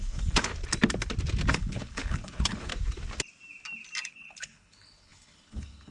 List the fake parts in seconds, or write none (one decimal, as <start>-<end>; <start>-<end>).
0.0-0.5; 1.5-2.7; 4.1-5.9